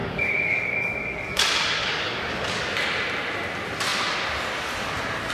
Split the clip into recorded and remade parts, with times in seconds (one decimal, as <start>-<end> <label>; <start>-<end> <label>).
0.0-1.4 remade; 1.4-1.8 recorded; 1.8-2.6 remade; 2.6-5.3 recorded